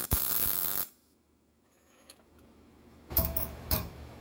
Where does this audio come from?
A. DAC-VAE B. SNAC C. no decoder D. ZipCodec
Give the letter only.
A